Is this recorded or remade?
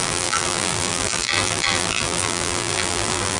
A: remade